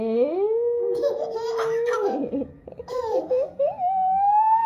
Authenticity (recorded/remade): remade